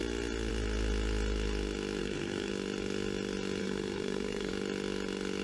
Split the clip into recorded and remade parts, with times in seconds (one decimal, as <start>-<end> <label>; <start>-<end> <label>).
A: 0.0-2.0 recorded; 2.0-2.5 remade; 2.5-3.6 recorded; 3.6-4.5 remade; 4.5-5.4 recorded